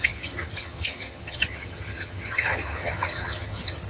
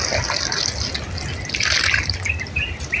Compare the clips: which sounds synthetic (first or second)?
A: first